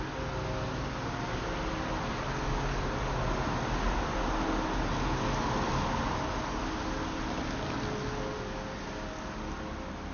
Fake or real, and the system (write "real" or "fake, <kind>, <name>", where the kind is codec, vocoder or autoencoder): real